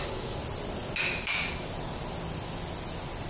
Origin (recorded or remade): recorded